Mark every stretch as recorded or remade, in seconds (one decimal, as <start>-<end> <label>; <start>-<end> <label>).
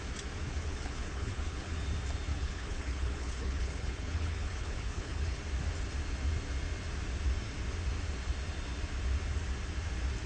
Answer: 0.0-0.5 recorded; 0.5-1.9 remade; 1.9-2.3 recorded; 2.3-5.4 remade; 5.4-10.3 recorded